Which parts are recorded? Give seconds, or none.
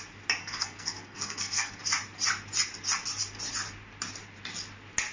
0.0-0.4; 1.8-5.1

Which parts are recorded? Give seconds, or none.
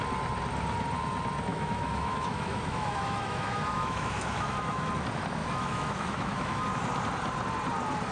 0.0-1.5; 4.9-5.4; 6.6-8.1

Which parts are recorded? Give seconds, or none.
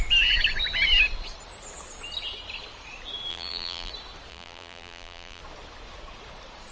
0.0-3.3; 3.9-4.3; 5.4-6.7